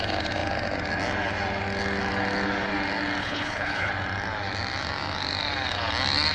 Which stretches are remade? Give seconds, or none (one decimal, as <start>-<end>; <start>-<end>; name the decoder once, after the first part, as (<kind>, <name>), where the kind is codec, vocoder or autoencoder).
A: 3.2-3.9 (codec, HILCodec)